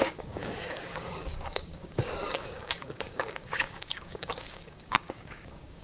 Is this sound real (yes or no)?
no